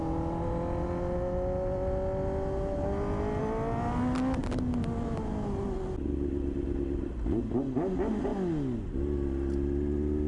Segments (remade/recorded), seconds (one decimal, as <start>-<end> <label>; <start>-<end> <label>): 0.0-10.3 recorded